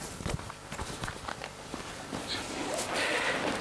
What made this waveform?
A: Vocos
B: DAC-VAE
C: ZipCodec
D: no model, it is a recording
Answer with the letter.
D